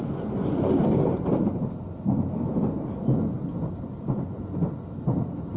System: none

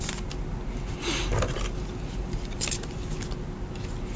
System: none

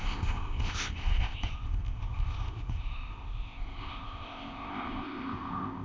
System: codec, ZipCodec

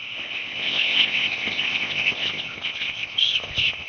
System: codec, ZipCodec